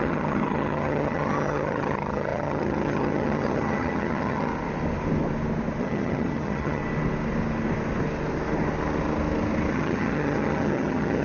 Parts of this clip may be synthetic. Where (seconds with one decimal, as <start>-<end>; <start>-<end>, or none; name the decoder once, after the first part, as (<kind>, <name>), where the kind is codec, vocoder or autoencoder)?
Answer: 0.0-4.5 (vocoder, HiFi-GAN); 5.8-6.8; 9.7-11.2